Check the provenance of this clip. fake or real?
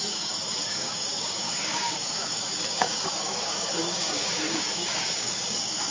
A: fake